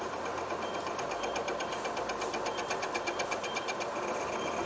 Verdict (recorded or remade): recorded